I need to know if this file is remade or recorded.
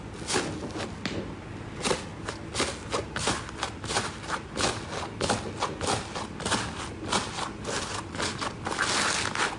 recorded